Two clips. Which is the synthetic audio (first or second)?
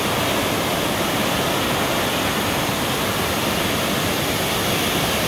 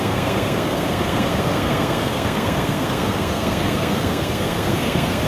second